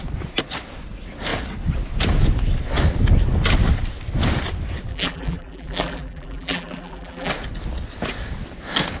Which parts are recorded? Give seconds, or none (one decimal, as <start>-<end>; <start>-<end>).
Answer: 0.0-4.9; 7.3-9.0